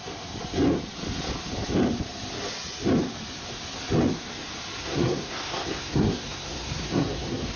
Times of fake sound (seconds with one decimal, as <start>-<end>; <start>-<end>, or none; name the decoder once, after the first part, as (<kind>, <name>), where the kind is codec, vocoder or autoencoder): 4.8-7.6 (codec, SNAC)